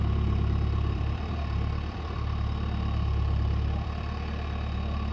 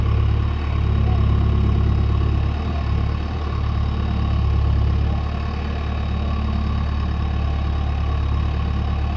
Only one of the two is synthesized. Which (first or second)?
first